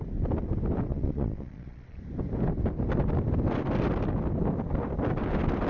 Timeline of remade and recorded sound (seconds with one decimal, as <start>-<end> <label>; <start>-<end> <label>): 0.0-0.9 recorded; 0.9-2.0 remade; 2.0-5.7 recorded